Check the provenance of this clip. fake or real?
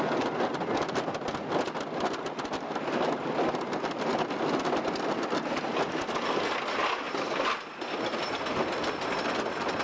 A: real